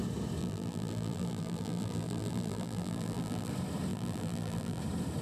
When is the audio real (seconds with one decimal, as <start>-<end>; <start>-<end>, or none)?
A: 0.0-0.4; 3.5-3.9; 4.8-5.2